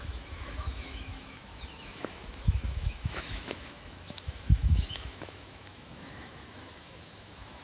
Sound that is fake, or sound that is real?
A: fake